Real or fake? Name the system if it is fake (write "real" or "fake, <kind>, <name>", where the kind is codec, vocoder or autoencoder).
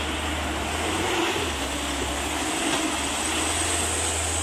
real